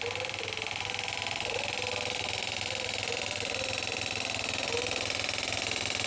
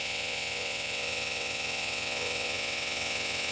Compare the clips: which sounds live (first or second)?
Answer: first